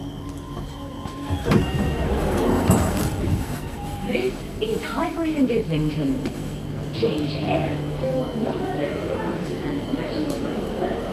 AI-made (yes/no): yes